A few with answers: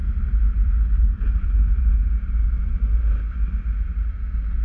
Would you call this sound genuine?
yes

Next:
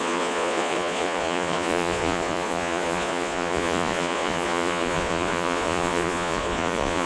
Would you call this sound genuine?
no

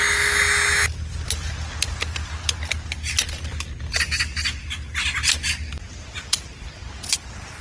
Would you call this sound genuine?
yes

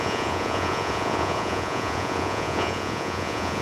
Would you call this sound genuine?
no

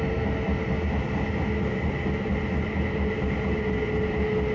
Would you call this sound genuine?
yes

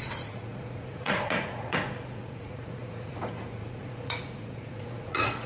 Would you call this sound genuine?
no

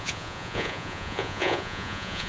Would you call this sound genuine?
no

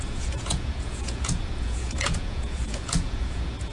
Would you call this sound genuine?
no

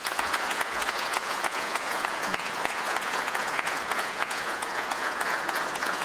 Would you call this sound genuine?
no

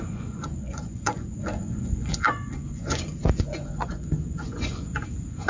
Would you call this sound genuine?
no